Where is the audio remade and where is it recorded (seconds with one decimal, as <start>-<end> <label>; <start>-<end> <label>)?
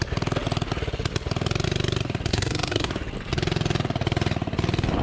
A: 0.0-2.3 recorded; 2.3-2.9 remade; 2.9-5.0 recorded